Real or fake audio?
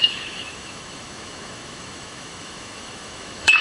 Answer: fake